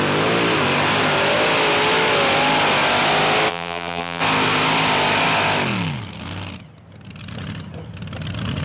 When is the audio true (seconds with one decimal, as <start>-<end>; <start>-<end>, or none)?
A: 0.0-3.5; 4.2-8.6